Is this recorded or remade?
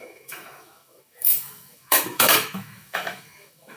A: remade